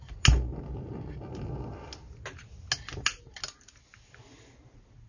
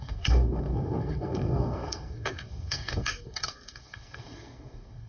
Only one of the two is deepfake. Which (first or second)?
second